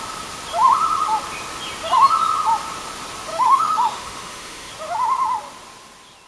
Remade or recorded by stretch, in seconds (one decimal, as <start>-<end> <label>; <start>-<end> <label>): 0.0-3.3 recorded; 3.3-4.7 remade; 4.7-6.3 recorded